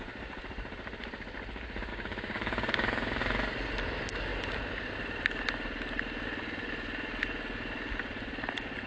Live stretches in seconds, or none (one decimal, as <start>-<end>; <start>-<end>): 0.0-1.9; 3.2-8.9